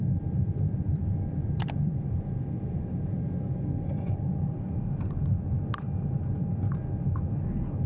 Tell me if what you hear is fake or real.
real